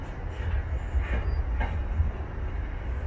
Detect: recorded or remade recorded